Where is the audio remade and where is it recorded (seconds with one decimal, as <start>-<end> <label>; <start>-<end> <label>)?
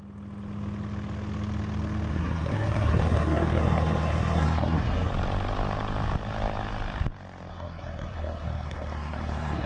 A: 0.0-2.1 recorded; 2.1-5.1 remade; 5.1-7.5 recorded; 7.5-9.7 remade